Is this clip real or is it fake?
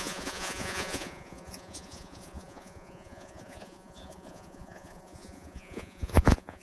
fake